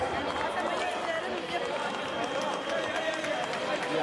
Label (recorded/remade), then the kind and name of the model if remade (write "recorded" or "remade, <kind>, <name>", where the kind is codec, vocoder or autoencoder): recorded